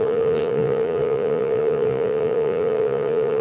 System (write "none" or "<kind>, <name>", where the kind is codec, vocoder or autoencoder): vocoder, Vocos